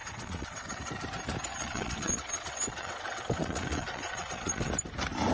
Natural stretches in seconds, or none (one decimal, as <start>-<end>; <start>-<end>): 0.9-1.5; 4.7-5.3

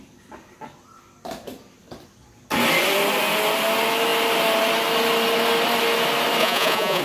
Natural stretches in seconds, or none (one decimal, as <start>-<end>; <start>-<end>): 0.0-6.4

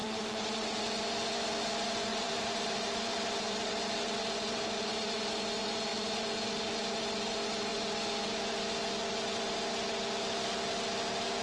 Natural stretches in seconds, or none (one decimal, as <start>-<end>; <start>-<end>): 0.8-2.1; 4.8-11.4

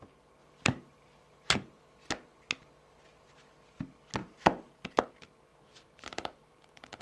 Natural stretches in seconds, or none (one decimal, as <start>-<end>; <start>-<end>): 0.0-0.4; 1.8-4.2; 5.1-5.5

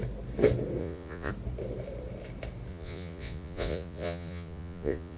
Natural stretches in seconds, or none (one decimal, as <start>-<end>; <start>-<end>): 0.0-0.8; 1.3-2.7

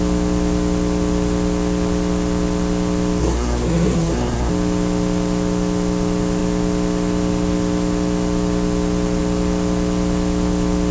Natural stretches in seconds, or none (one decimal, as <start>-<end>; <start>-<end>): 0.0-3.2; 4.5-10.9